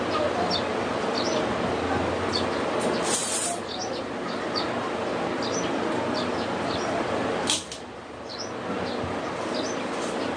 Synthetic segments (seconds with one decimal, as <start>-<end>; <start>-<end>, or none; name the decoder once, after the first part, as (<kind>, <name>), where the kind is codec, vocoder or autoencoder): 3.2-4.0 (vocoder, BigVGAN v2)